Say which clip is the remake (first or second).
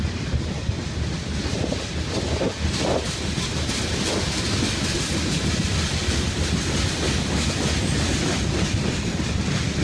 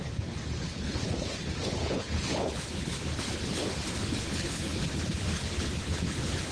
second